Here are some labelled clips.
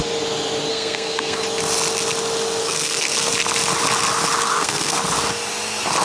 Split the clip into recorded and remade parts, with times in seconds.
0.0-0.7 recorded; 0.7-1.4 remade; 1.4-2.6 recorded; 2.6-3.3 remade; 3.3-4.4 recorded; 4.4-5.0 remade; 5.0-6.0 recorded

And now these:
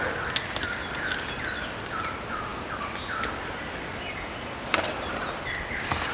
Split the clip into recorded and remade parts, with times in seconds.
0.0-6.1 recorded